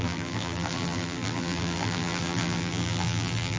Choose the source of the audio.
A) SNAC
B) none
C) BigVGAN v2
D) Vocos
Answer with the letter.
C